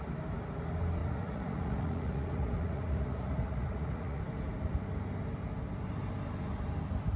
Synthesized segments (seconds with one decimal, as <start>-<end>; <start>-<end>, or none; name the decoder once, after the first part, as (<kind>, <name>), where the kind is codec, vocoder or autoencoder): 1.0-4.2 (vocoder, Vocos)

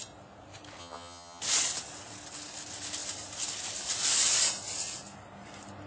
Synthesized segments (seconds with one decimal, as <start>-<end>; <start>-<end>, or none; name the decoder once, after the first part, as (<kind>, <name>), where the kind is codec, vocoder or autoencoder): 0.8-1.4 (vocoder, HiFi-GAN)

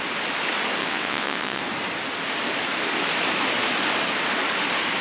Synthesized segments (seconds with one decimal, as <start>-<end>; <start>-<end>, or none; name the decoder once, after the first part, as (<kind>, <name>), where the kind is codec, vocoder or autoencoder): 0.8-1.6 (vocoder, WaveNeXt)

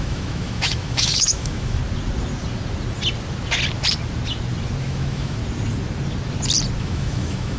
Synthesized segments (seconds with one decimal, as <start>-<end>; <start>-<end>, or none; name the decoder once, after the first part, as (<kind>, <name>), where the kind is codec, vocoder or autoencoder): 0.0-1.8 (autoencoder, DAC-VAE); 4.8-5.4; 6.8-7.6

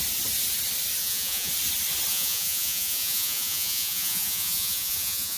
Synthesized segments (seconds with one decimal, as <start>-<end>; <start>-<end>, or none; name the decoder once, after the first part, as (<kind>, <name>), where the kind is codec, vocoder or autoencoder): 1.0-1.5 (vocoder, Vocos); 2.1-5.4

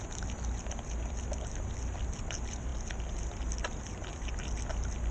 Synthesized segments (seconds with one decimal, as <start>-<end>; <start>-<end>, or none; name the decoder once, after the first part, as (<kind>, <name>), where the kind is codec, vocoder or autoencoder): none

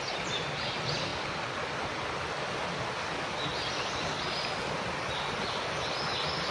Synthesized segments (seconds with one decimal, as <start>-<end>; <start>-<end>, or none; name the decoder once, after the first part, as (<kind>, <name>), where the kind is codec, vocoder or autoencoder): none

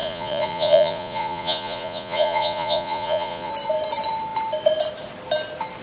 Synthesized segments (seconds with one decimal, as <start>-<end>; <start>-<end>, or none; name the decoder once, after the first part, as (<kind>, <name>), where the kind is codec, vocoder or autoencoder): 0.0-3.5 (vocoder, Vocos)